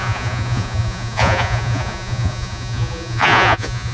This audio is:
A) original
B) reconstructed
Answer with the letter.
B